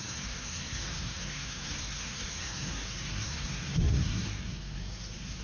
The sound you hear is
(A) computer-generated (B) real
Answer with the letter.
A